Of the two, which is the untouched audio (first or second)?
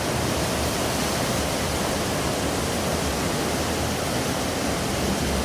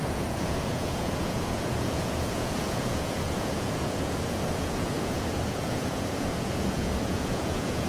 first